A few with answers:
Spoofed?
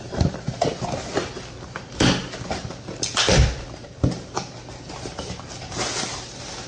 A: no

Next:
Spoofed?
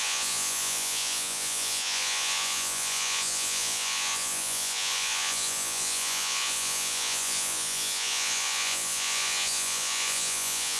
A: yes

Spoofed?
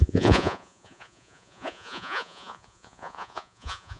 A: yes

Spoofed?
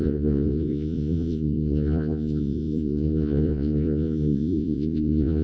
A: yes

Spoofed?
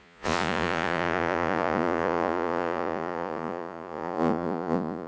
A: yes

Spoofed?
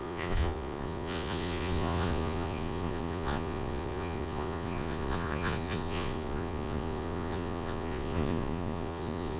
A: yes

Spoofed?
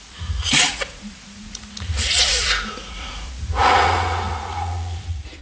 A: yes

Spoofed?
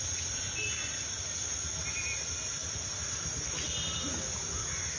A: no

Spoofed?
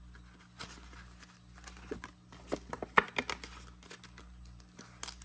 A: no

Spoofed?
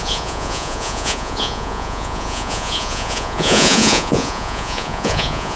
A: yes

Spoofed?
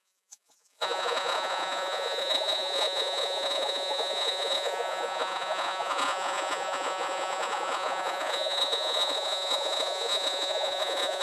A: yes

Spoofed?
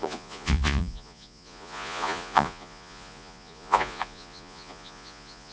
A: yes